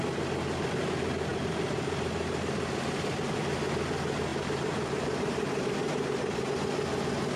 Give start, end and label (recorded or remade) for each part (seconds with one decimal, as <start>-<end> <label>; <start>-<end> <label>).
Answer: 0.0-4.3 recorded; 4.3-6.5 remade; 6.5-7.4 recorded

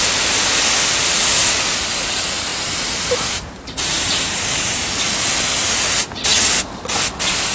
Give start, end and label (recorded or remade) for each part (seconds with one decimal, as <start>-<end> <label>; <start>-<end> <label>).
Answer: 0.0-2.5 recorded; 2.5-4.9 remade; 4.9-7.5 recorded

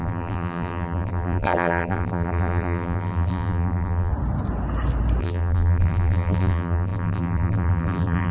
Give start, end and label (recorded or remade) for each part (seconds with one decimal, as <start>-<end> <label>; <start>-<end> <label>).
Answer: 0.0-4.1 remade; 4.1-5.2 recorded; 5.2-8.3 remade

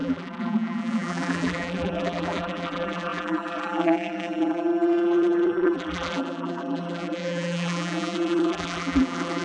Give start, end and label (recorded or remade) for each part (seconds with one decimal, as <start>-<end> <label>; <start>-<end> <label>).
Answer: 0.0-9.4 remade

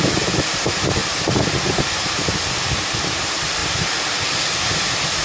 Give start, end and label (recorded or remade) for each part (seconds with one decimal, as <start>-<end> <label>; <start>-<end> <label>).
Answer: 0.0-5.2 recorded

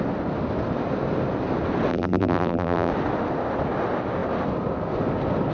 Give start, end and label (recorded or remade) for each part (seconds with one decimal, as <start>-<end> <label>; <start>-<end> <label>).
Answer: 0.0-1.9 recorded; 1.9-2.9 remade; 2.9-5.5 recorded

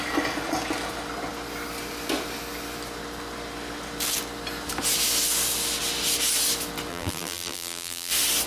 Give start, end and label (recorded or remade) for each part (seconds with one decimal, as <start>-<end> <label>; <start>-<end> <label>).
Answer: 0.0-6.9 recorded; 6.9-8.1 remade; 8.1-8.5 recorded